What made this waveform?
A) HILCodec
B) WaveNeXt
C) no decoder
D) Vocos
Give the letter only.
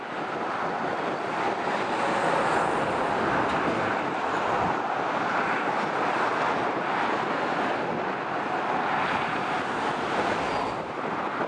C